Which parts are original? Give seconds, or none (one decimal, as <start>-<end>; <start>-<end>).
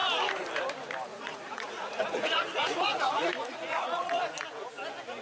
0.0-1.1; 4.2-5.2